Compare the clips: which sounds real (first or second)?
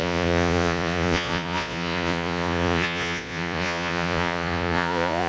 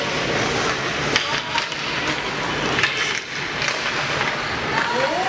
second